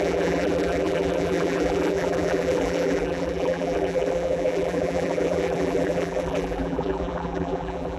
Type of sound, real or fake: fake